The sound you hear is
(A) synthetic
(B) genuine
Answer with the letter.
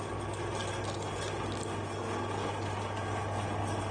B